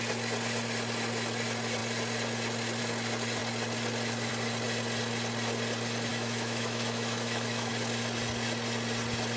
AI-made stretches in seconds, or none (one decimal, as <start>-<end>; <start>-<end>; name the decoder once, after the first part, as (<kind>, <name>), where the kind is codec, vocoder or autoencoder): 6.1-7.7 (autoencoder, DAC-VAE)

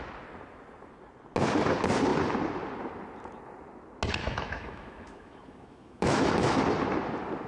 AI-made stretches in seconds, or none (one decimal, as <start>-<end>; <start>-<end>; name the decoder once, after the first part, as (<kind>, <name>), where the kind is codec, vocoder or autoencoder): 4.2-6.6 (autoencoder, DAC-VAE)

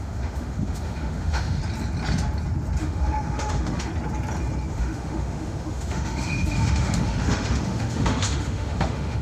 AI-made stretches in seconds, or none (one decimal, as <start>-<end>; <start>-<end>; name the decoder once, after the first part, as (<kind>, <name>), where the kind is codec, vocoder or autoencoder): 0.0-1.6 (autoencoder, DAC-VAE); 2.8-3.9; 4.7-9.2

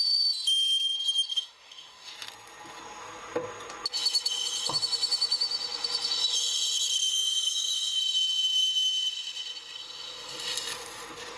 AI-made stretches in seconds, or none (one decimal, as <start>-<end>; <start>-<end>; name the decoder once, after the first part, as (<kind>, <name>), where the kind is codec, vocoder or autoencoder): 1.3-2.1 (autoencoder, DAC-VAE); 7.1-8.0

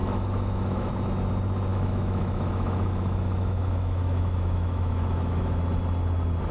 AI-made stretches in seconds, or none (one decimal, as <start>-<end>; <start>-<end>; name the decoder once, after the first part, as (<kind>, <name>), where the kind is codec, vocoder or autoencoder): 0.0-0.9 (autoencoder, DAC-VAE); 1.7-5.6

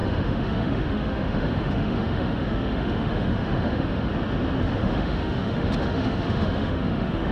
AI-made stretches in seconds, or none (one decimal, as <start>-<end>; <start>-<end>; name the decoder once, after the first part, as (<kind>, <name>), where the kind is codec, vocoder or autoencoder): 0.0-4.1 (autoencoder, DAC-VAE); 4.8-7.3